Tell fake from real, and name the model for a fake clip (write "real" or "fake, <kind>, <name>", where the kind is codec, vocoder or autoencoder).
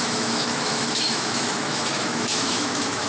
fake, autoencoder, DAC-VAE